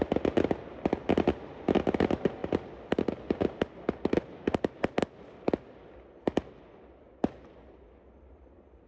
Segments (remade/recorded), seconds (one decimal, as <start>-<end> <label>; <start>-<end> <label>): 0.0-8.9 recorded